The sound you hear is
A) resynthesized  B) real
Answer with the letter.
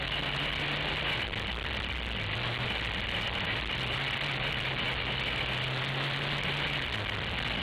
B